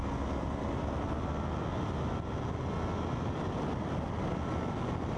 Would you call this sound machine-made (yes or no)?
no